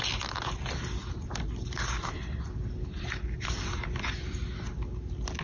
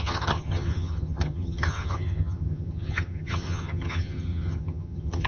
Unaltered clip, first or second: first